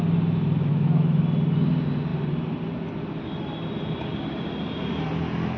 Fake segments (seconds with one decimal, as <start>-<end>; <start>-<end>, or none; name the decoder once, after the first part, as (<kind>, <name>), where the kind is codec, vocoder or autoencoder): 0.7-1.2 (autoencoder, DAC-VAE)